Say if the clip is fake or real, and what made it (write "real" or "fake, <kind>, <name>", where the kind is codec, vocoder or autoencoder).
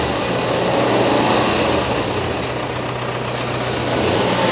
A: real